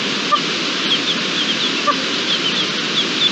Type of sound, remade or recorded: recorded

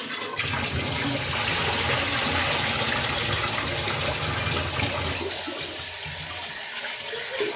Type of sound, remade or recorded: recorded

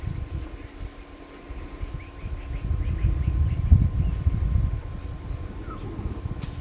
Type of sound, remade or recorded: recorded